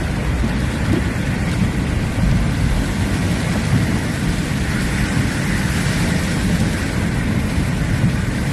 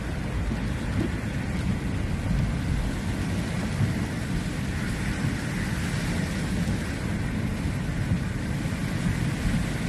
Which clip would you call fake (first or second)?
first